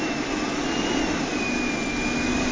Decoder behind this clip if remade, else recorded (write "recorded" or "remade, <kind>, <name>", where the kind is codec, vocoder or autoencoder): recorded